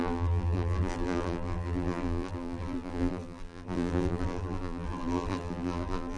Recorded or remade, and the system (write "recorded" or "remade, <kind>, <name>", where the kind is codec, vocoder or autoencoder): remade, vocoder, BigVGAN v2